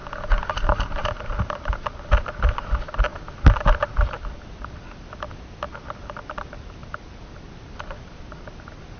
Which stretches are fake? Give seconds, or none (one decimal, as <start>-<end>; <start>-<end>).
none